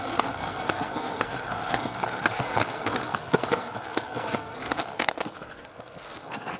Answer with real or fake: fake